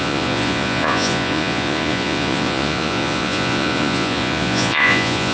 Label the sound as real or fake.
fake